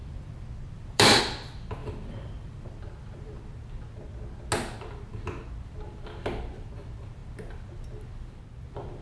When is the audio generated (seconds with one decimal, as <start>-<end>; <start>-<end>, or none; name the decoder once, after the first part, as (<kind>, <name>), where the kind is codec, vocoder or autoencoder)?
0.0-1.2 (vocoder, BigVGAN v2); 1.8-3.4